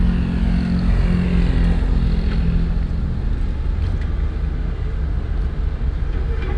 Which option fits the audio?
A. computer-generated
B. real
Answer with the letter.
B